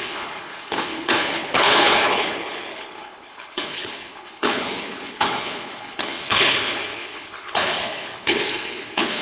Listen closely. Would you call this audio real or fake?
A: fake